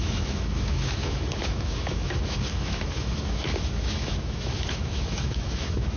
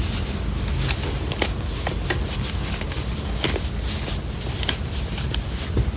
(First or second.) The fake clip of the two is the first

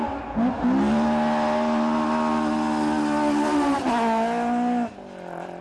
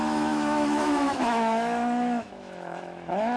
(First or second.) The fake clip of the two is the second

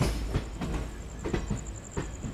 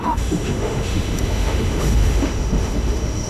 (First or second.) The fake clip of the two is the second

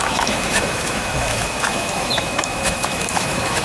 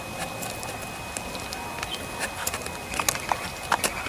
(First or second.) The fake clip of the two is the first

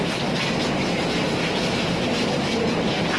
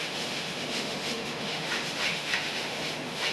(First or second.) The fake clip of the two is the second